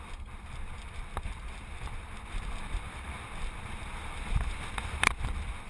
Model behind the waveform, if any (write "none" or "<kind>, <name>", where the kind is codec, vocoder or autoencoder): none